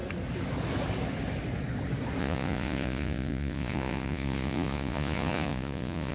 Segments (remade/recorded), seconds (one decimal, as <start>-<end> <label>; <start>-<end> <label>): 0.0-2.2 recorded; 2.2-6.1 remade